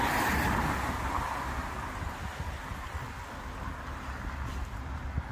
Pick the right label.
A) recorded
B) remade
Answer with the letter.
A